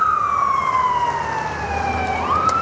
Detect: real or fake real